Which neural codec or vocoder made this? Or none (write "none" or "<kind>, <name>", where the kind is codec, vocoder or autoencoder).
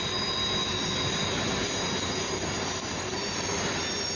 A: none